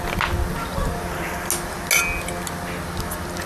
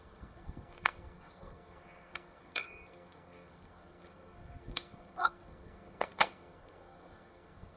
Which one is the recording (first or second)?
first